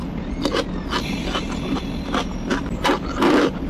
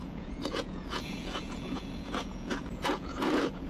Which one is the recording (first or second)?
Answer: first